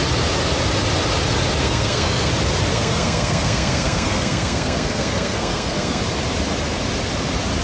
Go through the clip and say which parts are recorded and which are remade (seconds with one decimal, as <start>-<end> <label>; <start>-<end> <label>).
0.0-1.6 recorded; 1.6-2.3 remade; 2.3-2.7 recorded; 2.7-6.0 remade; 6.0-7.6 recorded